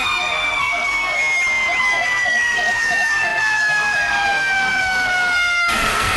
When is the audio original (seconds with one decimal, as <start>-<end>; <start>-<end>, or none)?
1.2-1.8